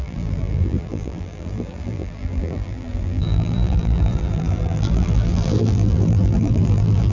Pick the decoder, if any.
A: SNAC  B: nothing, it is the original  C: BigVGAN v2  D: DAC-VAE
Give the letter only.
C